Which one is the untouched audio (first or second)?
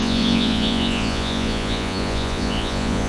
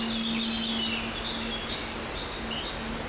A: second